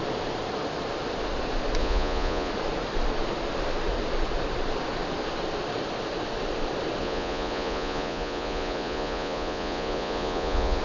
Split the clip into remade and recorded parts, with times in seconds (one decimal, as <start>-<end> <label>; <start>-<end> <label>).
0.0-1.8 recorded; 1.8-2.5 remade; 2.5-7.0 recorded; 7.0-10.8 remade